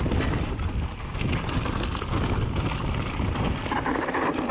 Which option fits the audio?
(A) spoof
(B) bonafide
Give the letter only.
B